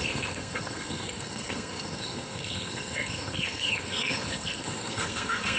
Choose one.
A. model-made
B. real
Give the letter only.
A